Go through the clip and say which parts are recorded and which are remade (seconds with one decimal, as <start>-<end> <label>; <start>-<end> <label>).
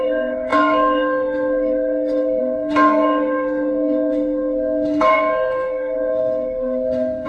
0.0-7.3 remade